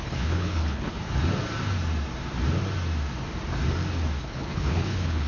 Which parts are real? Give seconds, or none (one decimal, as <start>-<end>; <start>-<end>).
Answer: 1.0-4.2